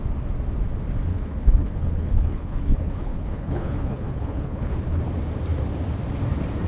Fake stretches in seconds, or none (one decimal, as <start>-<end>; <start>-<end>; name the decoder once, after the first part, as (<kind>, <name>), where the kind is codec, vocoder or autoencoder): 1.1-5.0 (codec, HILCodec)